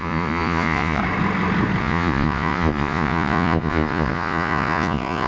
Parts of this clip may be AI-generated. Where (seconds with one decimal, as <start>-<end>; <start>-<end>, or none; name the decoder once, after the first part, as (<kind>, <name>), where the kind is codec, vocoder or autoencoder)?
0.0-1.0 (vocoder, Vocos); 1.8-5.3